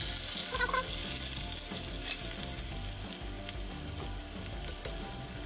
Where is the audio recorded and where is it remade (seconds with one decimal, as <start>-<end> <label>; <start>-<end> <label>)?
0.0-5.5 recorded